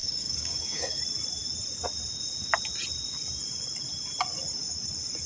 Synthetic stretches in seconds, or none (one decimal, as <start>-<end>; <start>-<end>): 0.0-1.0